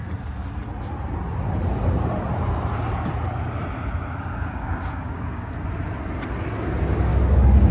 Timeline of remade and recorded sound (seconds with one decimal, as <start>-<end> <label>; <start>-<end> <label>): 0.0-4.3 recorded; 4.3-5.5 remade; 5.5-7.1 recorded; 7.1-7.7 remade